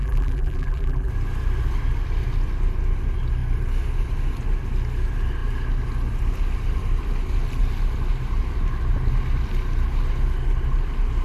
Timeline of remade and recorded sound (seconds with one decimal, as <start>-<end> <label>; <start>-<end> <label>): 0.0-1.1 remade; 1.1-11.2 recorded